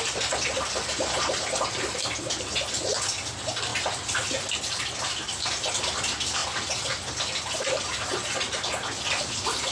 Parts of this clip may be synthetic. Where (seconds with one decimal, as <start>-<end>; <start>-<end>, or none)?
none